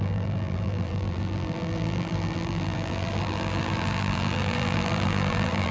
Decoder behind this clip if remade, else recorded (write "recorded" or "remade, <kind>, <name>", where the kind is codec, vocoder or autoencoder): remade, vocoder, BigVGAN v2